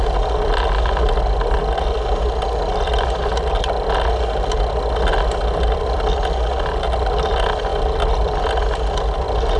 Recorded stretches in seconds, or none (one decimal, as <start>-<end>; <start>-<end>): 0.0-9.6